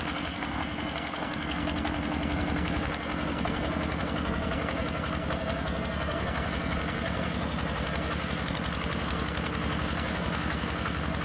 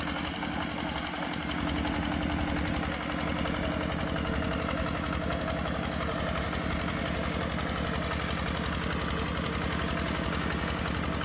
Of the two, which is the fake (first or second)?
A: first